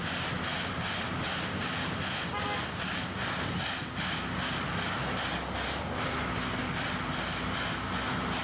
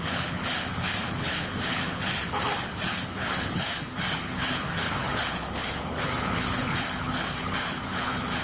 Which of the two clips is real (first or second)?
first